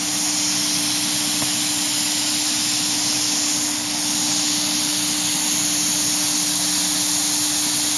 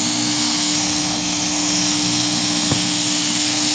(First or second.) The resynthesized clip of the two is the second